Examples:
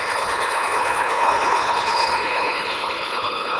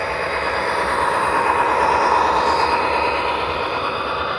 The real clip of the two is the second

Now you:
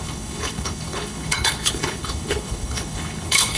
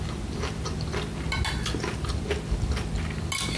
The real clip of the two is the second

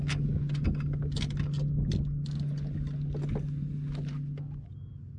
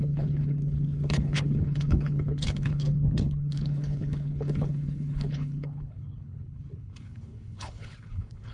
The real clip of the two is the first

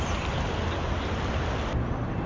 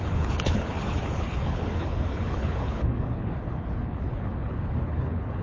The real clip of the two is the first